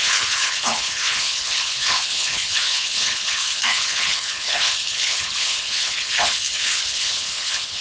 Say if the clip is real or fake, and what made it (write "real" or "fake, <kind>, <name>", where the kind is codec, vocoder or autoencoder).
fake, codec, HILCodec